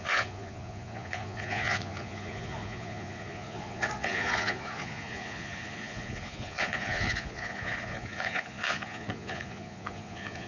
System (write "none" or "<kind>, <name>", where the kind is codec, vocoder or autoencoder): vocoder, Vocos